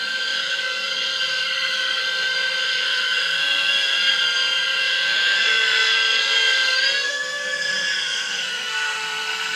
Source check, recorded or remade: remade